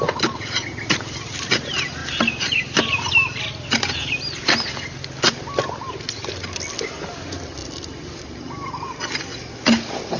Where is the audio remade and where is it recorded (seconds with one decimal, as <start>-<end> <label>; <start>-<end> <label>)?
0.0-2.0 recorded; 2.0-3.4 remade; 3.4-7.6 recorded; 7.6-8.2 remade; 8.2-10.2 recorded